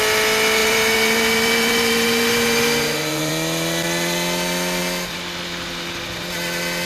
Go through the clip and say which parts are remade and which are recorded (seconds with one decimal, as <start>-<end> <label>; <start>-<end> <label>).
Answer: 0.0-0.6 recorded; 0.6-3.3 remade; 3.3-6.9 recorded